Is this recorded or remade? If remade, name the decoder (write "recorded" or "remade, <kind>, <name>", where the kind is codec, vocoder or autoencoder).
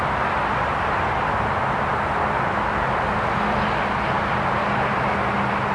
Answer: recorded